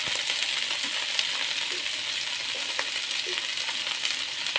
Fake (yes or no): no